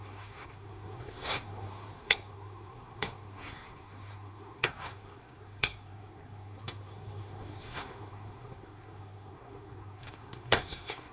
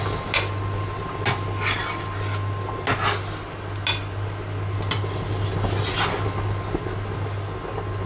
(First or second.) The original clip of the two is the second